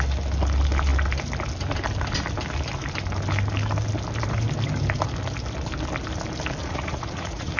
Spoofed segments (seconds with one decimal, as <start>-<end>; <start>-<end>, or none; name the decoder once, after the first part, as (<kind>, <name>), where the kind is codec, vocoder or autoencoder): 6.6-7.6 (vocoder, Vocos)